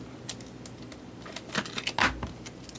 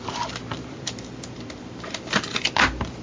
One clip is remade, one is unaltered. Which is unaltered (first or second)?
first